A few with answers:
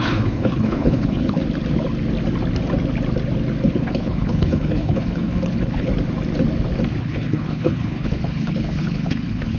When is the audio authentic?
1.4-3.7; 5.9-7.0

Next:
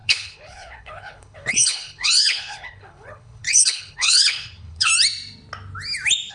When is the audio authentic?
4.9-6.3

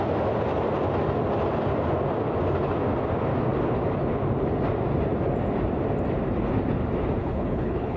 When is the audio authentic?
0.0-7.2

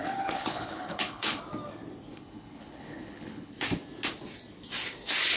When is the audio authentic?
1.4-2.1; 3.5-5.4

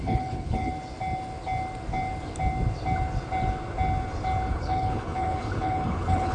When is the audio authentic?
0.7-4.5

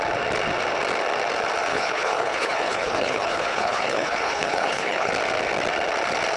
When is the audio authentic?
0.0-1.7; 5.1-6.4

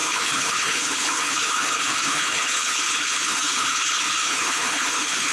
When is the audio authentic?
none